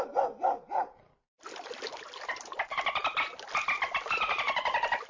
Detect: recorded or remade recorded